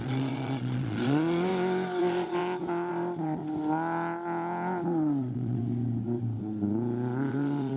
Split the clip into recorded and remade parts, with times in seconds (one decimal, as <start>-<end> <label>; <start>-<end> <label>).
0.0-1.5 remade; 1.5-2.0 recorded; 2.0-2.4 remade; 2.4-2.9 recorded; 2.9-3.4 remade; 3.4-4.9 recorded; 4.9-5.6 remade; 5.6-7.3 recorded; 7.3-7.8 remade